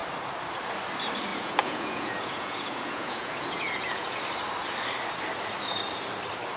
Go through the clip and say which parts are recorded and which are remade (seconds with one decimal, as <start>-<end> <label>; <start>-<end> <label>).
0.0-1.3 recorded; 1.3-4.2 remade; 4.2-6.6 recorded